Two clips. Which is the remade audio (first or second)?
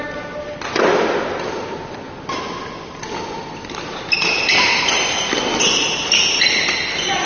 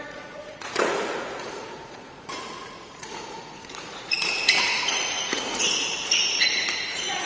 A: second